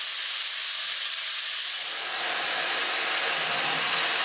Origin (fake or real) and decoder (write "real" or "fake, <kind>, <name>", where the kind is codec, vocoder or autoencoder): real